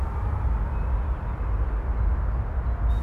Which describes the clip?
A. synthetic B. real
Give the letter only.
B